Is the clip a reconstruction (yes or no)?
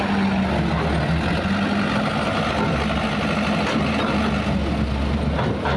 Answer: no